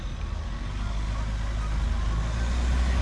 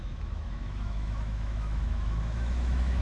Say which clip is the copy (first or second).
second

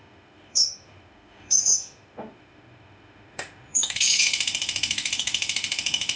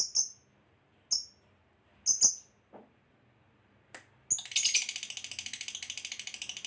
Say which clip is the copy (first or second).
first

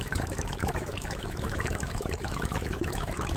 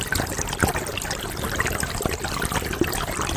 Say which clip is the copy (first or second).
first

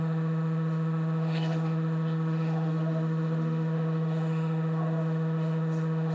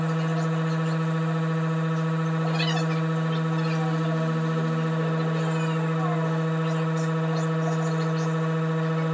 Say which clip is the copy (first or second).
first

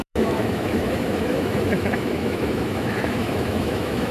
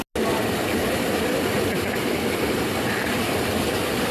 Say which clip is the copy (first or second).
first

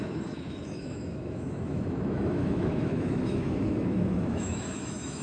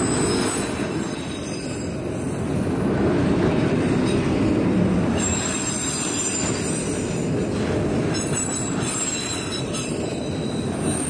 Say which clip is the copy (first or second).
first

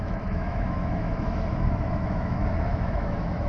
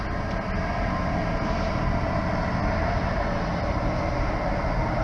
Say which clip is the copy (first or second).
first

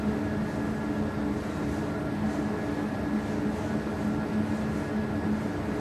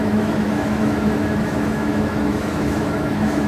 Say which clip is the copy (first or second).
second